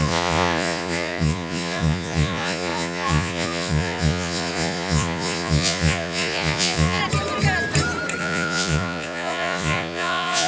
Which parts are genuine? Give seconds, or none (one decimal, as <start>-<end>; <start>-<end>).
7.0-8.2

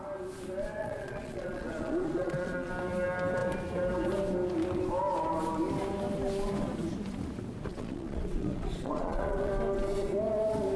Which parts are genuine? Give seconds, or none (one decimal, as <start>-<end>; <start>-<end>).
0.0-0.8; 2.7-7.7; 9.5-10.8

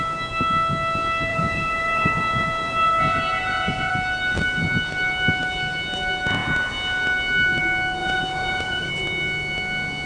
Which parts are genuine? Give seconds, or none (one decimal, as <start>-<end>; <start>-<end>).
0.0-1.3; 3.9-8.0; 8.9-10.1

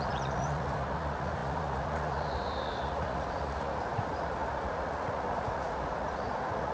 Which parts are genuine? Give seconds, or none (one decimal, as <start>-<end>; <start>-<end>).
none

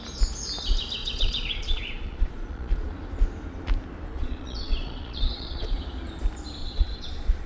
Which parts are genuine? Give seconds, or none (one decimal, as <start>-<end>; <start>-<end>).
0.0-1.0; 2.9-4.1; 5.8-6.6

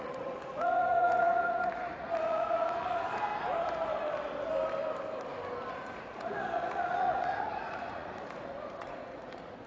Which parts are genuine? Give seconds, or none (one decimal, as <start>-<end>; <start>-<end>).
3.3-5.7

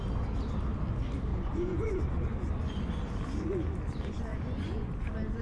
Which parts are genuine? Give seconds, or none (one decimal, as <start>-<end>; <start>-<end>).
0.0-1.3; 2.0-4.3; 4.9-5.4

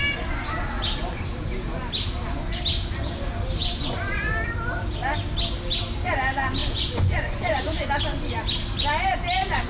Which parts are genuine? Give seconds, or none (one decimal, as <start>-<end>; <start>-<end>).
0.0-3.6; 4.3-6.6; 7.9-9.7